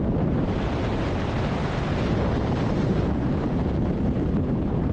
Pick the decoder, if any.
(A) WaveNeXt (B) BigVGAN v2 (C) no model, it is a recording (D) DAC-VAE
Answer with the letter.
B